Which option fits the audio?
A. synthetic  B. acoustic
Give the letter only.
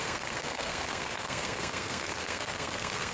A